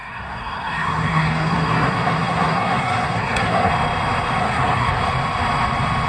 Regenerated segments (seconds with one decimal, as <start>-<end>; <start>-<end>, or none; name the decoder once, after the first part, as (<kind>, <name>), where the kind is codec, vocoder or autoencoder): 0.0-3.7 (codec, SNAC); 4.4-5.0